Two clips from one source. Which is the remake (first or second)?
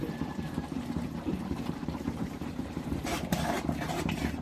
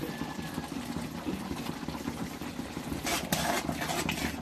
first